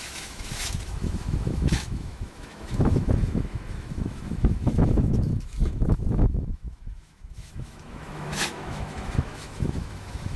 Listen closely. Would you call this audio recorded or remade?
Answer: remade